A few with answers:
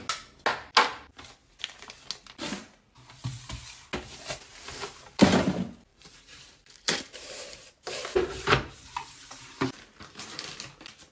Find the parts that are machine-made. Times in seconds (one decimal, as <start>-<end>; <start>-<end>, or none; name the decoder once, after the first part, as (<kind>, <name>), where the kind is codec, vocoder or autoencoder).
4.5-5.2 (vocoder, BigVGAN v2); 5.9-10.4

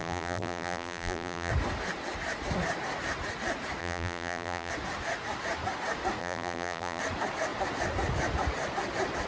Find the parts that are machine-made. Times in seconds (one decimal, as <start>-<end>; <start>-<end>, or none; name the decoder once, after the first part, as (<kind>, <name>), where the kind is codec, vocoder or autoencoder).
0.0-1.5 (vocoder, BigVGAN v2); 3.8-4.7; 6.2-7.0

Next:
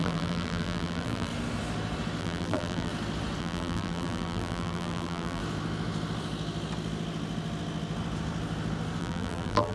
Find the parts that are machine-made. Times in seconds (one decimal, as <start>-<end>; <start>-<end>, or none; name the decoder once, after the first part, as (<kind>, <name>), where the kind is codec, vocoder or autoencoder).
0.0-1.3 (vocoder, BigVGAN v2); 2.2-2.9; 3.4-5.4; 9.0-9.7